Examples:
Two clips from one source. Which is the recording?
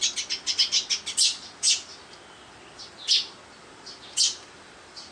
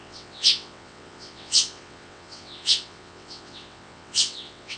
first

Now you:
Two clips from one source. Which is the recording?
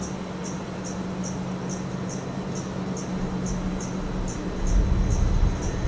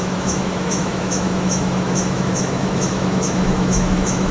first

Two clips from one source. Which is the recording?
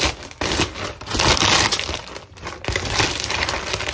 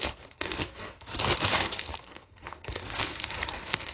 first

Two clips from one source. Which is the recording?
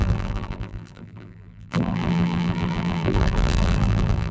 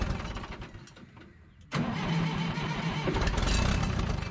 second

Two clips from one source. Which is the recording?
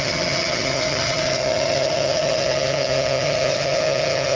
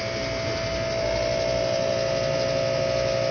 second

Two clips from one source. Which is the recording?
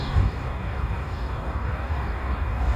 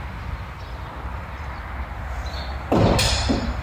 second